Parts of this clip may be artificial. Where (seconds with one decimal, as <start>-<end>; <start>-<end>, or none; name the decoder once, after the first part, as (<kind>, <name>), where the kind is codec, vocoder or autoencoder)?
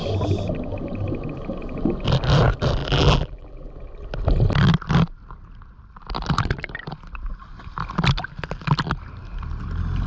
2.8-3.7 (vocoder, BigVGAN v2)